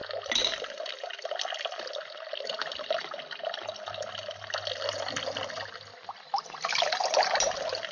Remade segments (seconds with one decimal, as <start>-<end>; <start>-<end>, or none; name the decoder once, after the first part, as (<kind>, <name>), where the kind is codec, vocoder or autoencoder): none